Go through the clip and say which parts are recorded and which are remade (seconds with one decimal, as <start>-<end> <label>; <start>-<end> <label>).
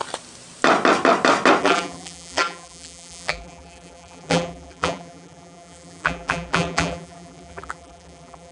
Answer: 0.0-1.6 recorded; 1.6-8.5 remade